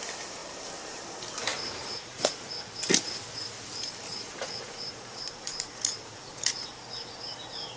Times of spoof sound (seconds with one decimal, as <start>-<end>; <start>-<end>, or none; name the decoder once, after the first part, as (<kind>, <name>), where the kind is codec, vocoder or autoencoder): 1.5-2.5 (vocoder, Vocos); 4.1-6.7